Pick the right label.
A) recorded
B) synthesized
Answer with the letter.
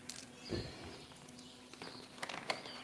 A